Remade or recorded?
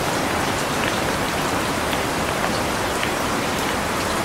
recorded